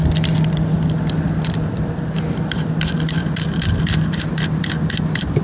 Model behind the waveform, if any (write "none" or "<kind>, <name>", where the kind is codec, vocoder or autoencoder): vocoder, BigVGAN v2